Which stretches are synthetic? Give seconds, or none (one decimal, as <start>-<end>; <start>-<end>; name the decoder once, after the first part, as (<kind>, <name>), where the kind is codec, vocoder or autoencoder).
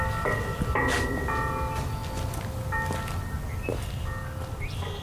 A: none